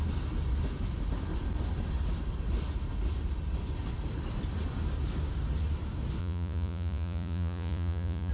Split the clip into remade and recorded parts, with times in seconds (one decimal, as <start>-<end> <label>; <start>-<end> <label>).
0.0-6.2 recorded; 6.2-8.3 remade